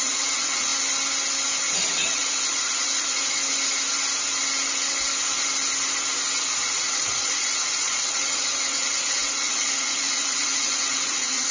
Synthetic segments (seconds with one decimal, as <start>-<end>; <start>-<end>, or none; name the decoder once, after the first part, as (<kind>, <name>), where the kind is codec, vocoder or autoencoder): 0.0-0.7 (vocoder, Vocos); 1.7-3.4; 6.9-11.5